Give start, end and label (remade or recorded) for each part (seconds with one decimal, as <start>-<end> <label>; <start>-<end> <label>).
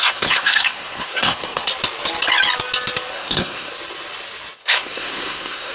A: 0.0-1.7 remade; 1.7-3.1 recorded; 3.1-3.7 remade; 3.7-4.6 recorded; 4.6-5.7 remade